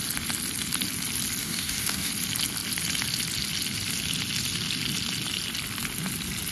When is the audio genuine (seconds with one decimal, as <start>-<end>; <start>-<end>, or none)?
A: 0.0-1.4; 2.1-6.5